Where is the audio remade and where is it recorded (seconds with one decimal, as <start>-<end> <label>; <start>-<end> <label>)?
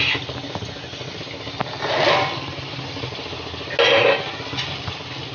0.0-5.3 recorded